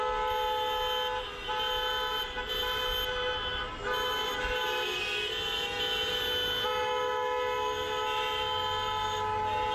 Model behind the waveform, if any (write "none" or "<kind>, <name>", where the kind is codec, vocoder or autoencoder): none